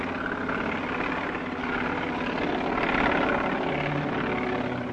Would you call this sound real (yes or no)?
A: yes